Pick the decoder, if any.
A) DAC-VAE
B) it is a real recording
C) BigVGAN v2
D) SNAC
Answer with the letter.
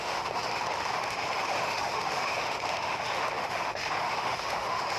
A